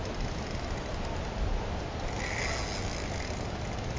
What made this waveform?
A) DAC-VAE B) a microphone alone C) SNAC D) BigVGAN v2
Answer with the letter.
B